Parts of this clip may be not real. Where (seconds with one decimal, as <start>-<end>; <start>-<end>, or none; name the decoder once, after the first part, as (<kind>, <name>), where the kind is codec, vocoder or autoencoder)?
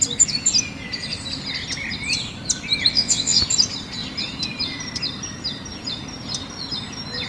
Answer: 2.9-3.4 (vocoder, WaveNeXt)